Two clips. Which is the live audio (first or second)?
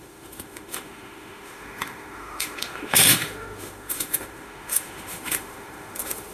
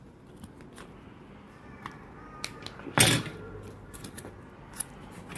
second